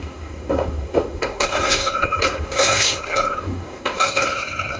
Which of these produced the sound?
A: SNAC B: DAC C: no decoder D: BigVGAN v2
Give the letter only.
A